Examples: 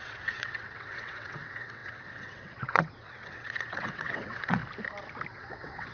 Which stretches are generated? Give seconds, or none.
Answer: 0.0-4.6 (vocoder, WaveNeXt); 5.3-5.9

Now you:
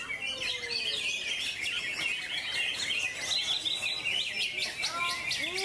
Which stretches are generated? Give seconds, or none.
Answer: none

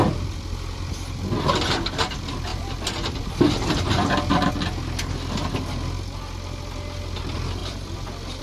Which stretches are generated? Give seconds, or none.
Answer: 2.5-4.5 (vocoder, BigVGAN v2); 7.6-8.4

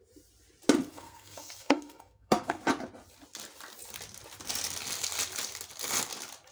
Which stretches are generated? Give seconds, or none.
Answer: 0.9-2.6 (codec, SNAC)

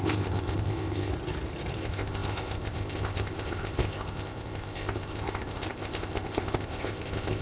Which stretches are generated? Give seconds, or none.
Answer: 0.0-1.1 (codec, ZipCodec); 1.8-7.4

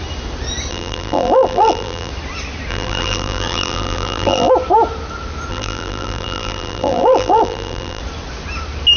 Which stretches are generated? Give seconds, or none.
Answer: 0.7-2.1 (vocoder, BigVGAN v2); 2.7-4.5; 5.5-8.0

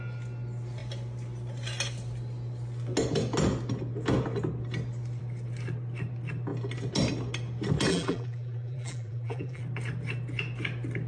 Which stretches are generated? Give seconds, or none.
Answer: 7.9-9.6 (vocoder, BigVGAN v2)

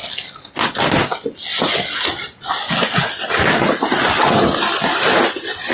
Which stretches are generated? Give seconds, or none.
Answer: none